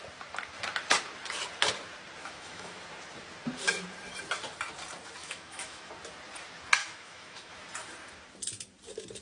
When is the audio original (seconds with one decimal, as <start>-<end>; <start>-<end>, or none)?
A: 0.0-2.2; 2.8-5.2; 5.9-6.8; 7.5-9.2